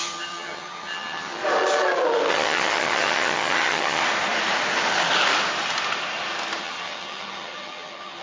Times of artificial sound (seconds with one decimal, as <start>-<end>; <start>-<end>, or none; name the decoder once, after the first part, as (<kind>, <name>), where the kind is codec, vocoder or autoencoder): 0.0-1.4 (vocoder, HiFi-GAN); 2.3-4.0; 6.6-8.2